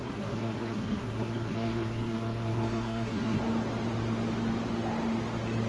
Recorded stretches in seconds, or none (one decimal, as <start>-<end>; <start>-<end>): 3.4-5.7